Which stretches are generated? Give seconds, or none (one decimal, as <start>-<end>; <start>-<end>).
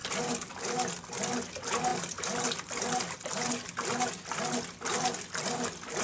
none